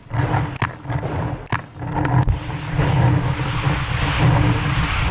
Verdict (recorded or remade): recorded